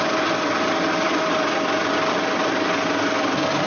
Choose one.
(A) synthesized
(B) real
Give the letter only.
B